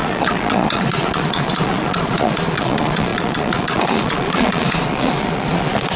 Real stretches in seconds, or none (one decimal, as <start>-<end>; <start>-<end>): none